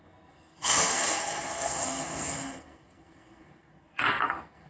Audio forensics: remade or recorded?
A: remade